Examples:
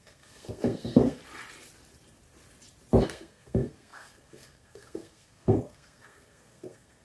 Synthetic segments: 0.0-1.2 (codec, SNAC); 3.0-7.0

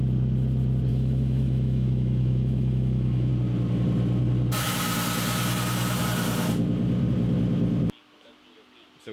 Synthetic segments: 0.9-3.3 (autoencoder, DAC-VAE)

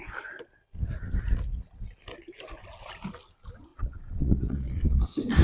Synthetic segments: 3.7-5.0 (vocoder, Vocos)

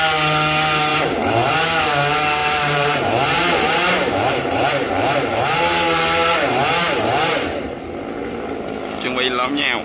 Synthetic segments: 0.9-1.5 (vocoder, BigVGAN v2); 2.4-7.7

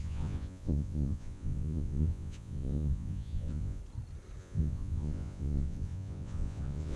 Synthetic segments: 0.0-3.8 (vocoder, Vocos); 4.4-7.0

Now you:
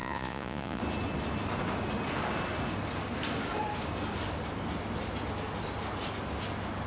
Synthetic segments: 0.0-0.8 (vocoder, Vocos)

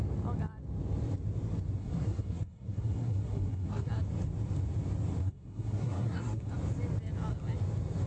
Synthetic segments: 1.8-3.9 (codec, SNAC); 5.2-6.5